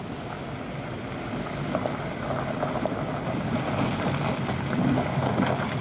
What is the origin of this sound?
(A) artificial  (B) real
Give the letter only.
B